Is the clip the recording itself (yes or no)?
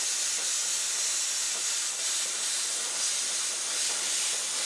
yes